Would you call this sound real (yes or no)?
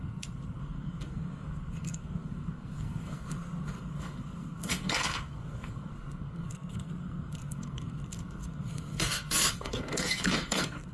no